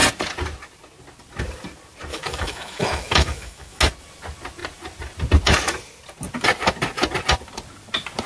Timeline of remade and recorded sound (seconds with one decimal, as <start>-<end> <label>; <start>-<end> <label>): 0.0-2.1 recorded; 2.1-3.8 remade; 3.8-8.3 recorded